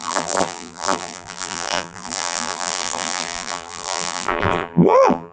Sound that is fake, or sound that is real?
fake